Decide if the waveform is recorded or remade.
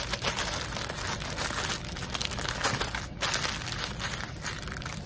recorded